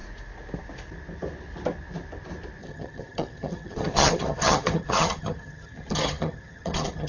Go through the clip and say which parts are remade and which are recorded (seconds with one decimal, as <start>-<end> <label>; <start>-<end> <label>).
0.0-2.6 recorded; 2.6-7.1 remade